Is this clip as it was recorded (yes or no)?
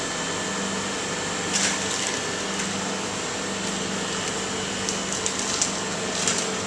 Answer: yes